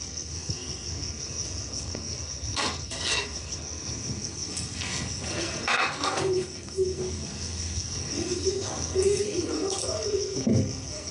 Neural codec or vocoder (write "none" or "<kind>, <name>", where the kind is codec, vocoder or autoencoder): codec, SNAC